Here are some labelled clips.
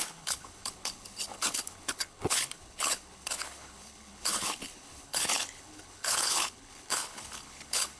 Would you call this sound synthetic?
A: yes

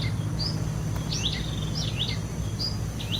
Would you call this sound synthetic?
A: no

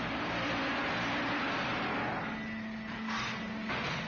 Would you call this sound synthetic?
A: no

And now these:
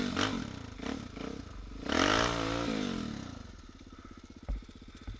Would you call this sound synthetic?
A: no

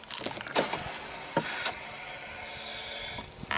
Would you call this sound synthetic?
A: no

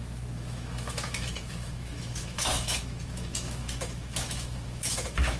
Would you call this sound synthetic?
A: yes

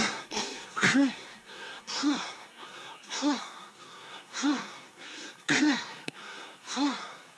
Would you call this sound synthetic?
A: yes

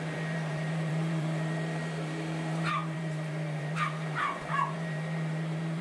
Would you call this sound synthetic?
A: yes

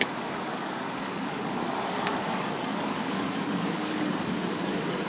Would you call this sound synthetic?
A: yes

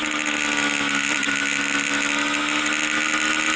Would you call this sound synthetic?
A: no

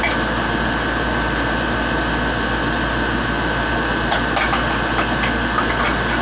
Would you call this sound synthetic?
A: no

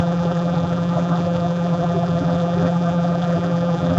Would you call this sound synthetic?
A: yes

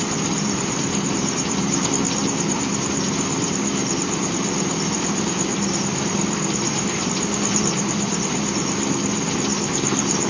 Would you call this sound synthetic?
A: yes